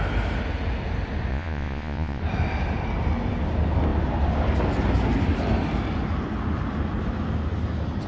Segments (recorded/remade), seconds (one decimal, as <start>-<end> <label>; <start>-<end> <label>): 0.0-1.3 recorded; 1.3-2.2 remade; 2.2-8.1 recorded